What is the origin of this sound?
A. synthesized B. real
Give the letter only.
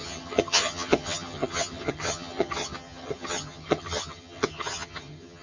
A